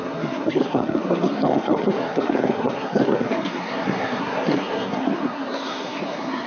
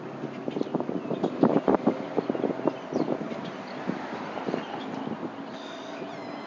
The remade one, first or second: first